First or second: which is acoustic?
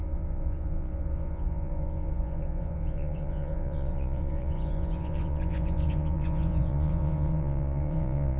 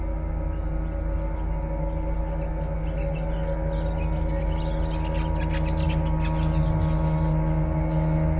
second